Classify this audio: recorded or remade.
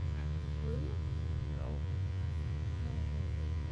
remade